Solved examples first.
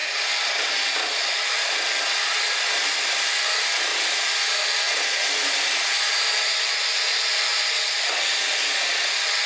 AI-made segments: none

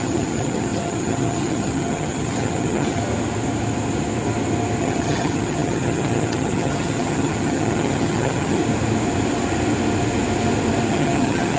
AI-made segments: 0.0-3.0; 4.8-8.6; 10.9-11.6

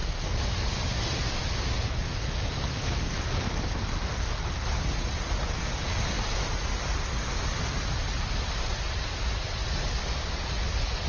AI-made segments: none

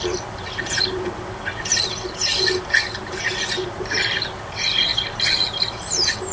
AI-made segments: none

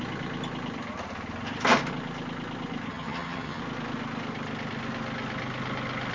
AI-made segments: 2.9-3.6

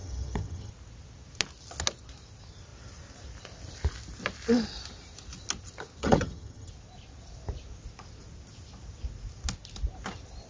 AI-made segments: 0.0-0.7; 6.0-6.7

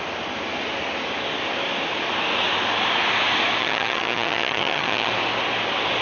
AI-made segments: 3.6-5.1